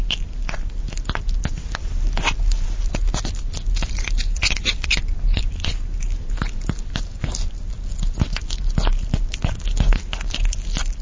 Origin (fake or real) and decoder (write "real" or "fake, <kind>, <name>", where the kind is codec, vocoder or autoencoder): real